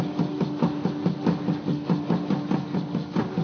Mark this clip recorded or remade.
recorded